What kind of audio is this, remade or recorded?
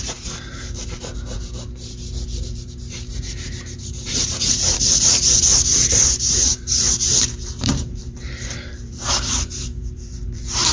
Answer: remade